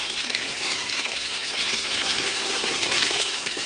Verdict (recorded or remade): remade